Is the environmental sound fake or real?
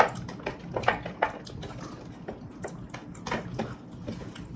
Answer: real